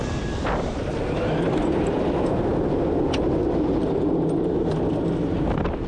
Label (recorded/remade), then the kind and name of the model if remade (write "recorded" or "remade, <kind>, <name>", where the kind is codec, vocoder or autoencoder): recorded